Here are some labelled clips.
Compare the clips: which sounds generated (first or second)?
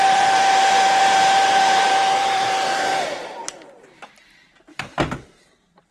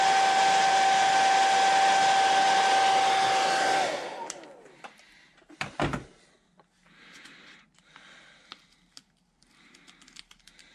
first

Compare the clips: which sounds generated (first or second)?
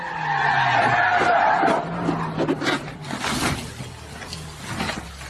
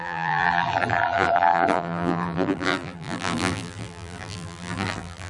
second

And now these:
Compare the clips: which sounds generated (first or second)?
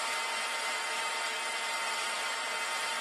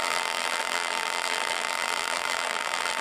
second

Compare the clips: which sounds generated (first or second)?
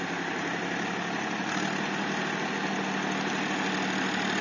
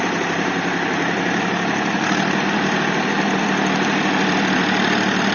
second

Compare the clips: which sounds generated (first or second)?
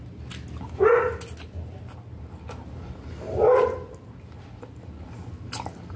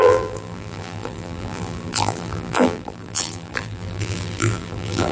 second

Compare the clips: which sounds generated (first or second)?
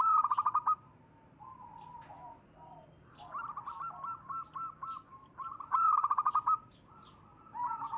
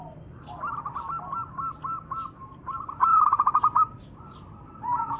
second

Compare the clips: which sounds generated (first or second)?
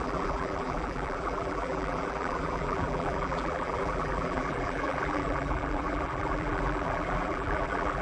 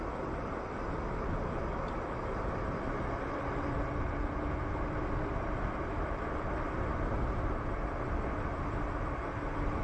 first